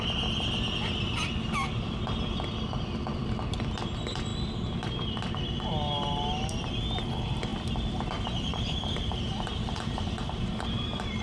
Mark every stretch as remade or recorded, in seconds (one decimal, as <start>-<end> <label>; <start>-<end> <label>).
0.0-8.5 recorded; 8.5-11.2 remade